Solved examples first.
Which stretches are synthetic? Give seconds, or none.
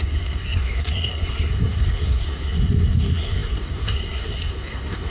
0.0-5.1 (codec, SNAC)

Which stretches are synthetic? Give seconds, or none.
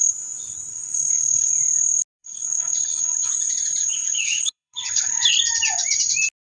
0.7-1.5 (codec, HILCodec); 2.2-3.3; 3.8-5.3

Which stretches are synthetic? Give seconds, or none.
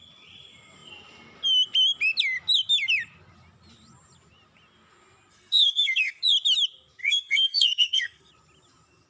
5.3-6.2 (codec, SNAC); 7.0-8.3